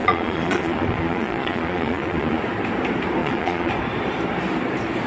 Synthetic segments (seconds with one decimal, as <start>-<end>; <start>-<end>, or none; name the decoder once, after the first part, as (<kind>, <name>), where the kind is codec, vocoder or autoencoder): 0.0-2.4 (vocoder, Vocos); 3.2-3.7